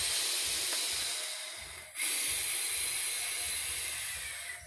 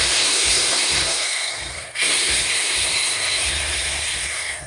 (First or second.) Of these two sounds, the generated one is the second